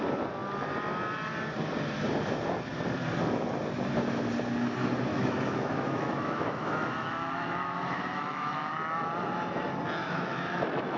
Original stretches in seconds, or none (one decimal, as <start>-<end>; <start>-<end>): 0.0-5.1; 8.7-10.0